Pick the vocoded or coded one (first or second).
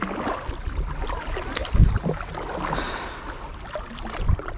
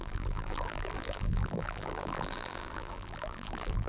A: second